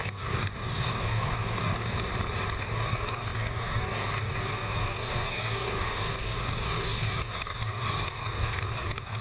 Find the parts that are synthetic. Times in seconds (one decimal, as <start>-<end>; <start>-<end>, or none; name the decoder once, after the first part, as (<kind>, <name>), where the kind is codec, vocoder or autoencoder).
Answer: 0.0-2.1 (codec, DAC); 2.6-9.2